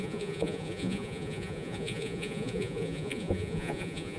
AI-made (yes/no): yes